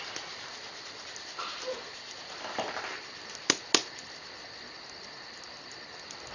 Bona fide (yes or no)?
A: yes